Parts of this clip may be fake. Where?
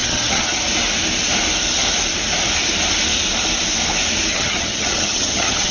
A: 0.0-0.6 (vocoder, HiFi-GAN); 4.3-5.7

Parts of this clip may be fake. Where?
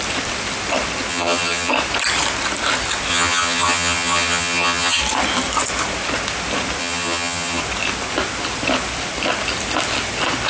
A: 1.1-1.7 (vocoder, HiFi-GAN); 3.1-5.0; 6.8-7.6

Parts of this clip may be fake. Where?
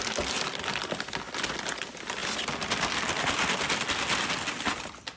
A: none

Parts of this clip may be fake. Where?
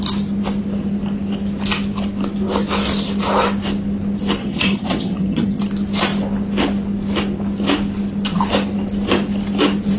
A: 4.4-5.6 (vocoder, HiFi-GAN)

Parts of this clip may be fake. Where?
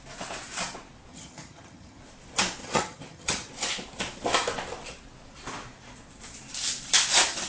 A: 1.1-2.0 (vocoder, HiFi-GAN); 2.6-3.5